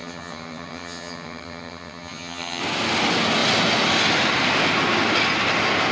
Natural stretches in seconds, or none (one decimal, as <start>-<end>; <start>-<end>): 2.6-5.9